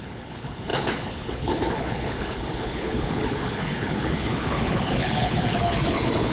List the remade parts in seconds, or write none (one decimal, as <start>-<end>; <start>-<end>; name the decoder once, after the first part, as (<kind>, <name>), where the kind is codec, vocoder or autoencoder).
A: 0.0-6.3 (codec, HILCodec)